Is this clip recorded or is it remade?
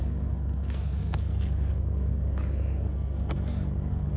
remade